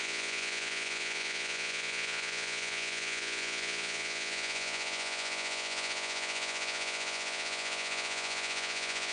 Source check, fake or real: fake